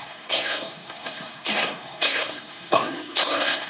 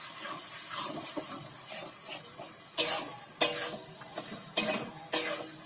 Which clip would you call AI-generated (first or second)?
first